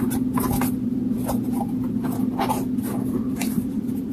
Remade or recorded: recorded